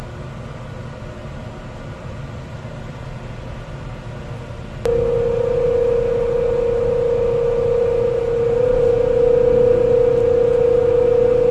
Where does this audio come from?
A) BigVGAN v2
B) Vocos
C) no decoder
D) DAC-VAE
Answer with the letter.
C